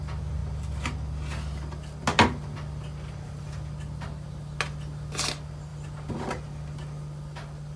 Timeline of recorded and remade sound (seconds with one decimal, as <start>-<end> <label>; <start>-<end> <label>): 0.0-7.8 recorded